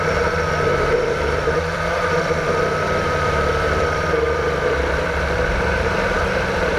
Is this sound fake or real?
fake